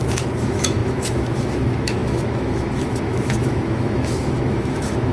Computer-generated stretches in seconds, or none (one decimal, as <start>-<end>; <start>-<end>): 0.0-5.1